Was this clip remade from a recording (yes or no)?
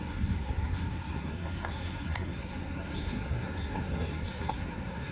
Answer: yes